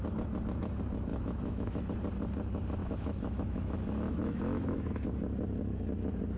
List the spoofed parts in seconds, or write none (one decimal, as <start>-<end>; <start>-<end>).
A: 1.1-1.8; 2.8-4.9